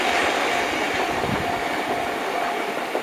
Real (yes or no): yes